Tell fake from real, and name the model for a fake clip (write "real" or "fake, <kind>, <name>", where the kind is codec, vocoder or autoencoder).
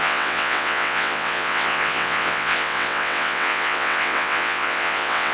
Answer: fake, vocoder, WaveNeXt